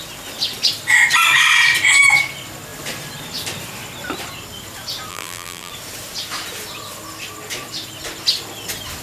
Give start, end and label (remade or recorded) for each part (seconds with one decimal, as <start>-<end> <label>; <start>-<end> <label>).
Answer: 0.0-5.1 recorded; 5.1-5.7 remade; 5.7-9.0 recorded